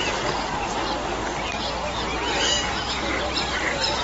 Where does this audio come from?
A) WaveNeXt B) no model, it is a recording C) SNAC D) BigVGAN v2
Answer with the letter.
B